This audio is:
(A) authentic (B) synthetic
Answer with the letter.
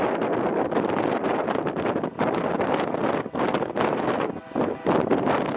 A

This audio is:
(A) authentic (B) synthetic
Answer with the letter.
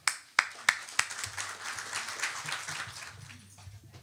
A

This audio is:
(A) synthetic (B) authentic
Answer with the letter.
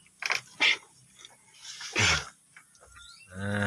B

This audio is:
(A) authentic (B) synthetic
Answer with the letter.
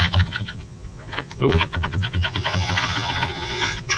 B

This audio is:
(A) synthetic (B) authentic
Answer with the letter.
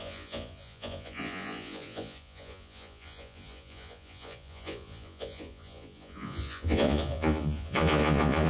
A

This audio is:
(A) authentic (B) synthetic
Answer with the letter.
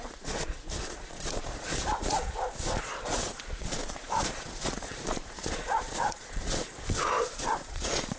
B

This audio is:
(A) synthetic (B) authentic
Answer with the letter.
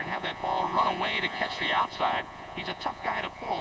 A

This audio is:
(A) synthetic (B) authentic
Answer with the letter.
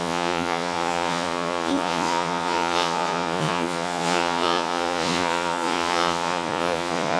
A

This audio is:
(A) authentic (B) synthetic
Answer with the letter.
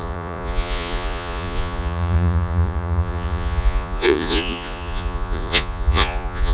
B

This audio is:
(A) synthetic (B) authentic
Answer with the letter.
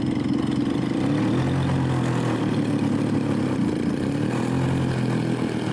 B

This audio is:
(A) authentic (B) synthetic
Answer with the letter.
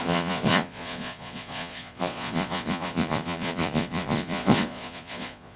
B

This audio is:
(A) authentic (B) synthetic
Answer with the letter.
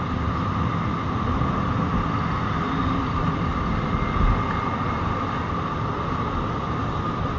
A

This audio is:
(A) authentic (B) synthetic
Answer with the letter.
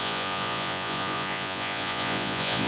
B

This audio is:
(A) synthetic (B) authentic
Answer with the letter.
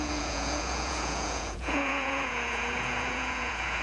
A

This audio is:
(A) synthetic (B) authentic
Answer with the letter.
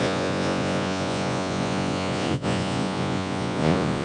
A